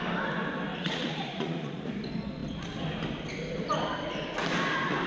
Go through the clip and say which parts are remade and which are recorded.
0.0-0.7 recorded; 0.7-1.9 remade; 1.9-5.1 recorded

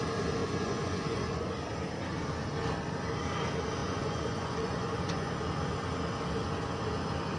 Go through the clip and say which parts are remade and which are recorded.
0.0-0.4 recorded; 0.4-1.5 remade; 1.5-3.8 recorded; 3.8-5.4 remade; 5.4-7.4 recorded

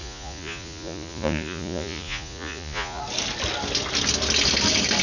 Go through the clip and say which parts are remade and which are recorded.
0.0-3.0 remade; 3.0-5.0 recorded

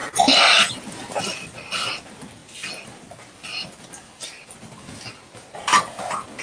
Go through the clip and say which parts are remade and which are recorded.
0.0-6.4 recorded

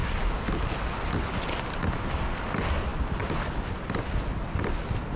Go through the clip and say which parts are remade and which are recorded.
0.0-5.2 recorded

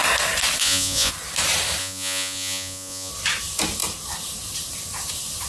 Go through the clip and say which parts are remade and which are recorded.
0.0-0.6 recorded; 0.6-1.1 remade; 1.1-1.8 recorded; 1.8-3.1 remade; 3.1-5.5 recorded

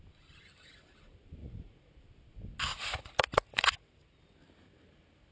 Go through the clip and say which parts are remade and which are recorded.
0.0-1.4 recorded; 1.4-1.9 remade; 1.9-2.7 recorded; 2.7-3.9 remade; 3.9-5.3 recorded

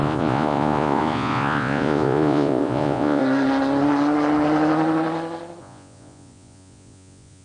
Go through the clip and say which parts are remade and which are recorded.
0.0-3.2 remade; 3.2-5.6 recorded; 5.6-7.4 remade